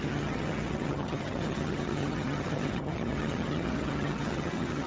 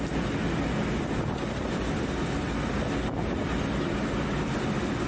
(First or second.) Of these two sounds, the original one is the second